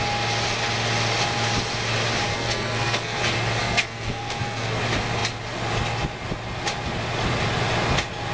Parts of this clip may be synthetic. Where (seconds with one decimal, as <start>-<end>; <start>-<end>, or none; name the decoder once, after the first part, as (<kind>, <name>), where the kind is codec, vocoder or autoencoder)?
2.3-3.2 (codec, SNAC); 3.6-4.8